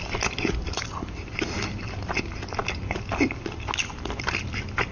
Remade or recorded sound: recorded